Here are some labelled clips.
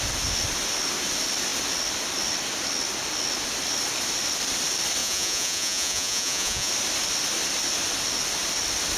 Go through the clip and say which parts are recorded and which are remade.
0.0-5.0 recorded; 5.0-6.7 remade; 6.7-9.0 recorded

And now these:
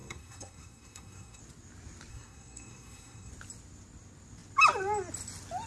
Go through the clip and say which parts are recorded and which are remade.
0.0-1.4 remade; 1.4-2.1 recorded; 2.1-3.3 remade; 3.3-5.7 recorded

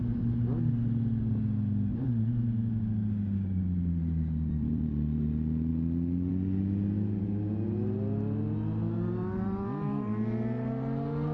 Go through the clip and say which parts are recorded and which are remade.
0.0-11.3 recorded